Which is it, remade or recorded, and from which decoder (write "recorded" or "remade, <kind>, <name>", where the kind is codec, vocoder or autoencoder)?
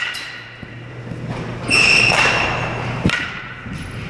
remade, vocoder, BigVGAN v2